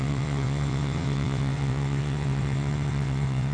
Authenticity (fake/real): fake